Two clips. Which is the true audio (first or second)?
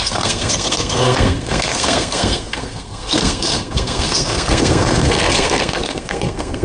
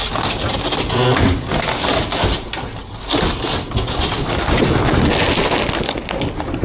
second